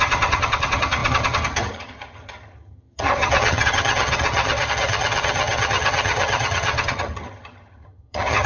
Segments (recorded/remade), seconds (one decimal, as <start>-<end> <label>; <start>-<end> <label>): 0.0-8.5 remade